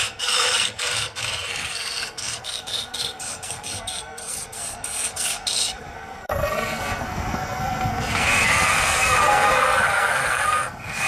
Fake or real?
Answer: fake